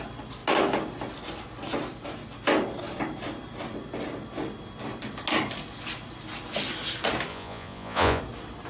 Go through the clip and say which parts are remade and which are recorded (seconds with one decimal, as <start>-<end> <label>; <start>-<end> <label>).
0.0-7.3 recorded; 7.3-8.2 remade; 8.2-8.7 recorded